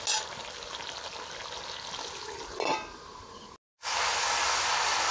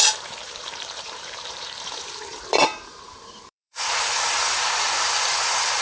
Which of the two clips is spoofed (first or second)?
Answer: second